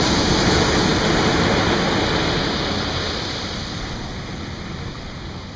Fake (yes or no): no